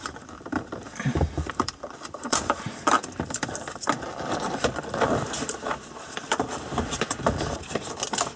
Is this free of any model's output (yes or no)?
no